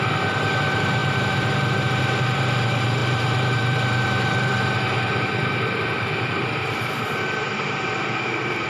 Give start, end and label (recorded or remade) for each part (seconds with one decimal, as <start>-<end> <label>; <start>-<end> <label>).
0.0-8.7 remade